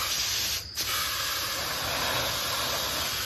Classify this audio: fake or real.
real